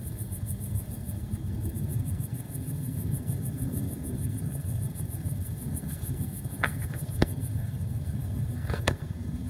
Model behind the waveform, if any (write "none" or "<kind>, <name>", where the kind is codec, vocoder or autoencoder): codec, SNAC